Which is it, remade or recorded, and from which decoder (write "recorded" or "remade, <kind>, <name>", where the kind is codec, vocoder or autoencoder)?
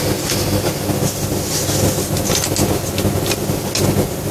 recorded